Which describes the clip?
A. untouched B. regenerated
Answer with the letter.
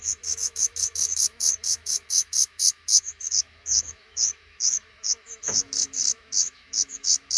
B